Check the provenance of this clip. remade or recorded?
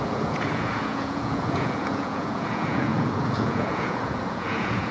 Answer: remade